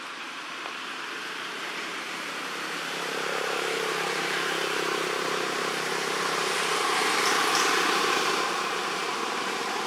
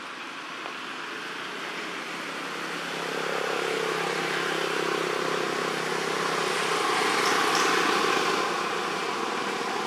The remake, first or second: first